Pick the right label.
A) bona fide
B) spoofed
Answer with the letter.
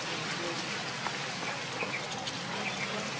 A